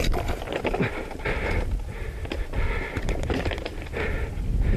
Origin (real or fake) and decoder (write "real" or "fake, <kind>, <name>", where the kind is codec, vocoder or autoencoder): real